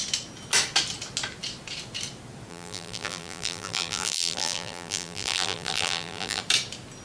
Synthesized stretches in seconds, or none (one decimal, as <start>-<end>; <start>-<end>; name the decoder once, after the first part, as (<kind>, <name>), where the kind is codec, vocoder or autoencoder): 2.5-6.4 (vocoder, BigVGAN v2)